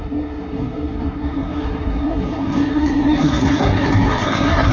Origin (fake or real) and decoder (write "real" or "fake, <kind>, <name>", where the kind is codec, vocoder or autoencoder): fake, codec, SNAC